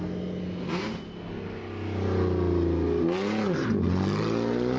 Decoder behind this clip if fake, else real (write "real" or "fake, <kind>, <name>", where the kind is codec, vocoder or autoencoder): real